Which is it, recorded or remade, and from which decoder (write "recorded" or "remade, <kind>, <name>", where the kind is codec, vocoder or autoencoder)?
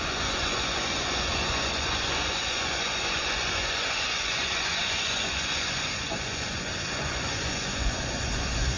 remade, vocoder, Vocos